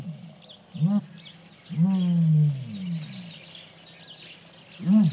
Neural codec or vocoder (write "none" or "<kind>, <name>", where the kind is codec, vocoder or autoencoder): none